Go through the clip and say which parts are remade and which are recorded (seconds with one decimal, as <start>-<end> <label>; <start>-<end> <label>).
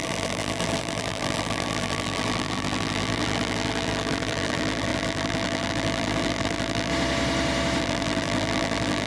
0.0-6.9 remade; 6.9-7.8 recorded; 7.8-9.1 remade